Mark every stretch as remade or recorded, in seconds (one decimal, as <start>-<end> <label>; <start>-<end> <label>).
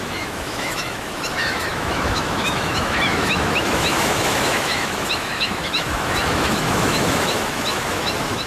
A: 0.0-8.5 remade